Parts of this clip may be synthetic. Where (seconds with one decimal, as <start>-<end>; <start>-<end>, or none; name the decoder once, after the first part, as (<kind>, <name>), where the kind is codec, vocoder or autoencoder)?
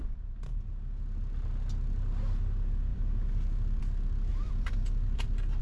2.9-3.8 (vocoder, BigVGAN v2); 4.3-5.6